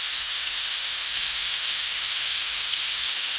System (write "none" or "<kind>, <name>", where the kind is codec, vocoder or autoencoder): autoencoder, DAC-VAE